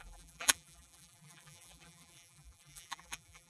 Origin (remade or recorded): remade